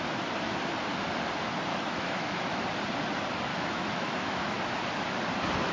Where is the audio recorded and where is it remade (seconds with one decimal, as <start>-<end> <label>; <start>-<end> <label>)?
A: 0.0-1.7 recorded; 1.7-2.6 remade; 2.6-3.5 recorded; 3.5-4.6 remade; 4.6-5.7 recorded